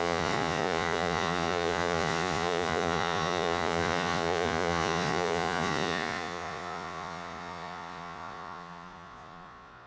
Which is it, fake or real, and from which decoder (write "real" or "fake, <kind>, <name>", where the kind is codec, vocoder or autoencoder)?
fake, vocoder, Vocos